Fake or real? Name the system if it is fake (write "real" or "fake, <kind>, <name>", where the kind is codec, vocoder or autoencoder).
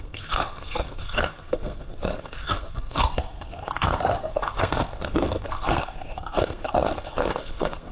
fake, codec, SNAC